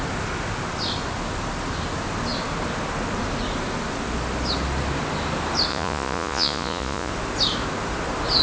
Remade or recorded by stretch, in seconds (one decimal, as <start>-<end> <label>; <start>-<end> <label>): 0.0-5.7 recorded; 5.7-7.1 remade; 7.1-8.4 recorded